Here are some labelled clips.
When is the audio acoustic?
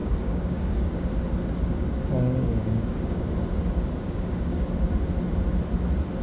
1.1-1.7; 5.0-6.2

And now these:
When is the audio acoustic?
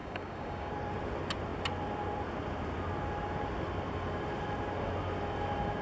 0.7-5.8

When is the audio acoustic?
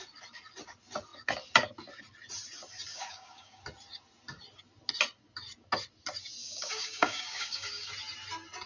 0.0-2.9; 3.6-6.4; 7.9-8.7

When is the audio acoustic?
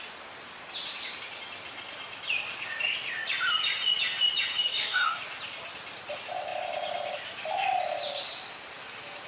0.0-4.6; 5.2-9.3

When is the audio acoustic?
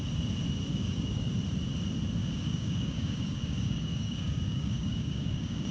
0.0-0.7; 1.3-2.2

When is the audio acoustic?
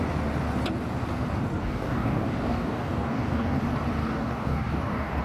0.0-1.6; 3.6-4.0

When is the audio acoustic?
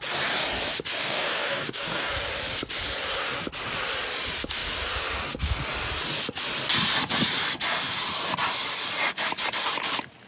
0.0-1.0; 2.1-10.3